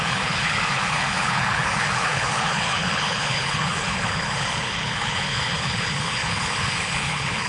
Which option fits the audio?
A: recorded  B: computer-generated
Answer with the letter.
B